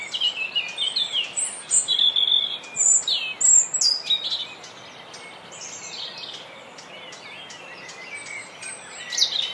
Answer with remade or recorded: recorded